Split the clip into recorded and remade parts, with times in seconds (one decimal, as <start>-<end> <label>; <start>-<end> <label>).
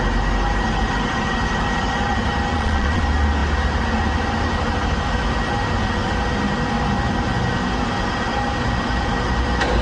0.0-2.5 recorded; 2.5-3.0 remade; 3.0-9.8 recorded